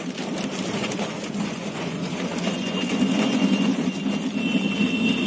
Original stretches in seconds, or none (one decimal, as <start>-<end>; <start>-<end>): 0.0-0.8; 4.0-5.3